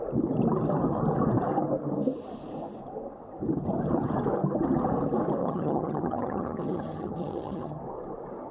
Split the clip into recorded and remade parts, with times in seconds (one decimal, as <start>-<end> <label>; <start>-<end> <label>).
0.0-5.4 recorded; 5.4-7.8 remade; 7.8-8.5 recorded

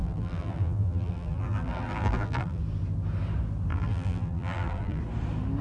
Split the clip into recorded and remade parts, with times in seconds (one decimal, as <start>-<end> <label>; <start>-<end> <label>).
0.0-2.6 remade; 2.6-3.7 recorded; 3.7-5.0 remade; 5.0-5.6 recorded

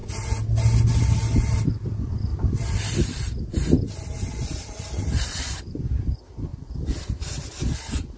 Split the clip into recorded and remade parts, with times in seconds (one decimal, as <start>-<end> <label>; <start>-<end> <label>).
0.0-2.3 recorded; 2.3-5.6 remade; 5.6-6.5 recorded; 6.5-7.4 remade; 7.4-8.2 recorded

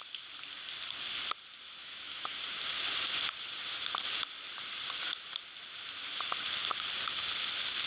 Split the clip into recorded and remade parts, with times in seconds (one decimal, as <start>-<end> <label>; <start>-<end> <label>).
0.0-1.8 recorded; 1.8-2.4 remade; 2.4-7.9 recorded

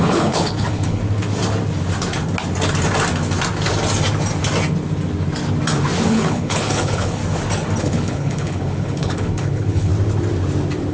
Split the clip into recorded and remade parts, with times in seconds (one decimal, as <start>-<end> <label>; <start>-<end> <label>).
0.0-1.0 remade; 1.0-6.1 recorded; 6.1-7.2 remade; 7.2-7.8 recorded; 7.8-9.9 remade; 9.9-10.9 recorded

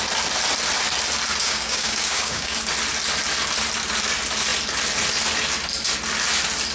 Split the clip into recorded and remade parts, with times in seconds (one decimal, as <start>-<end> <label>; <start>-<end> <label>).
0.0-1.4 recorded; 1.4-2.6 remade; 2.6-6.7 recorded

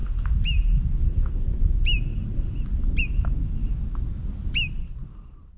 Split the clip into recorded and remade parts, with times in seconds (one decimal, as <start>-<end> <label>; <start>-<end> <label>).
0.0-5.6 recorded